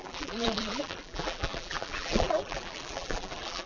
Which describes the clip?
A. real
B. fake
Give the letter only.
B